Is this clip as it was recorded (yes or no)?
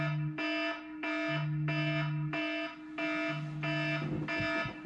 yes